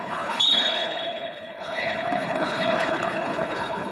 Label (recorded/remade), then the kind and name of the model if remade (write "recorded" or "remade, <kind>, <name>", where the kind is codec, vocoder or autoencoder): remade, codec, HILCodec